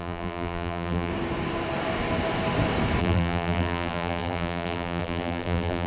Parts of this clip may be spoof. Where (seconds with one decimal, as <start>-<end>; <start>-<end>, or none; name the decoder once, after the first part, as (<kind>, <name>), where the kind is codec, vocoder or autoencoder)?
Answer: 0.0-1.1 (vocoder, BigVGAN v2); 3.0-5.9